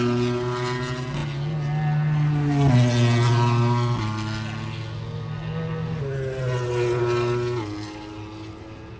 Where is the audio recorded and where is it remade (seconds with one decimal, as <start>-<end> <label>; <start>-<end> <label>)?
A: 0.0-9.0 recorded